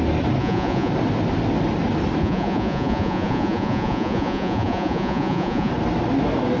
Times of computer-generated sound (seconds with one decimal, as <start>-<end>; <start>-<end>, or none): 0.4-0.9; 2.2-5.7